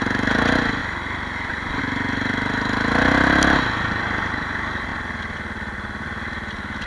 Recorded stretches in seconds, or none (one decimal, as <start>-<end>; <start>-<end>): 0.0-6.9